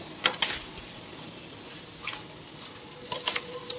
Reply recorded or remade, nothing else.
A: recorded